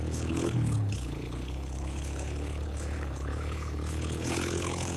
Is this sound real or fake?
fake